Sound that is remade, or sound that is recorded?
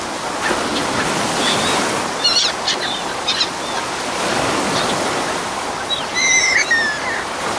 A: recorded